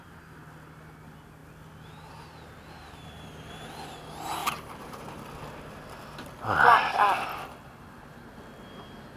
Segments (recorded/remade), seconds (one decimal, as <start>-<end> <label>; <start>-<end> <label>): 0.0-4.4 recorded; 4.4-5.3 remade; 5.3-9.2 recorded